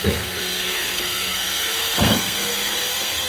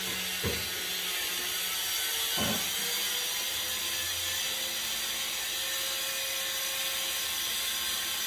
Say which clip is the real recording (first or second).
second